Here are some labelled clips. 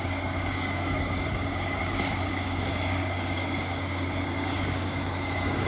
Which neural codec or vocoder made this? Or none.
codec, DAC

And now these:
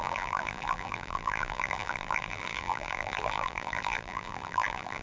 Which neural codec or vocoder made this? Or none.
vocoder, BigVGAN v2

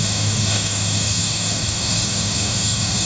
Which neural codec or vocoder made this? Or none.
codec, DAC